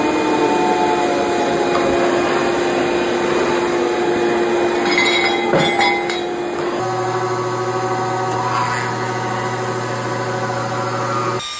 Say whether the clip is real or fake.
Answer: real